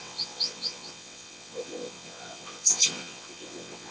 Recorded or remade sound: remade